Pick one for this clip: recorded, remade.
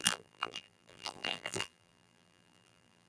remade